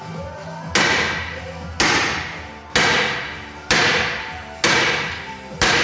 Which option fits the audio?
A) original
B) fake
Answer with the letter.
A